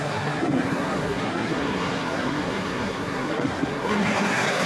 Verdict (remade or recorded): remade